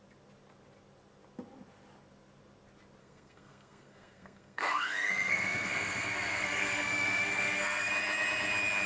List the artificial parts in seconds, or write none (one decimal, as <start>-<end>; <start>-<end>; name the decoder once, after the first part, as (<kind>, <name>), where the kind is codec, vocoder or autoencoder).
3.0-7.9 (codec, SNAC)